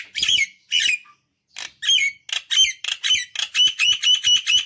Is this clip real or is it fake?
real